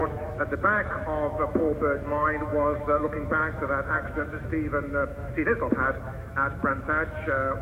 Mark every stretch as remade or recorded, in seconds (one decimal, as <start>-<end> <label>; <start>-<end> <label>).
0.0-7.6 remade